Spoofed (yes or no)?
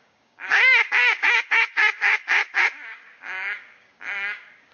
yes